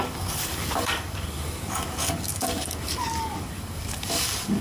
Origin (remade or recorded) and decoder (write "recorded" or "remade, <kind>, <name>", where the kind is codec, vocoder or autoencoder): remade, codec, DAC